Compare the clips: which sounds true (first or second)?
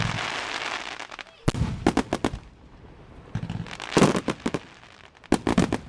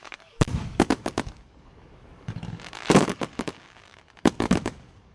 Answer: first